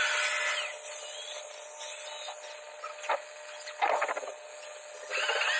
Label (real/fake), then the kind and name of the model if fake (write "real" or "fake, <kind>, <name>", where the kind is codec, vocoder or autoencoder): real